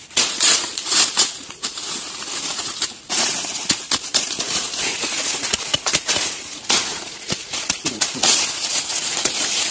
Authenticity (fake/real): fake